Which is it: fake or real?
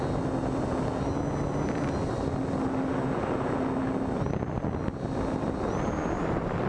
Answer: real